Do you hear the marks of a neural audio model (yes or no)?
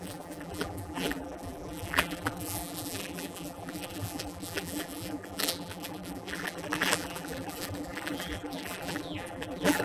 yes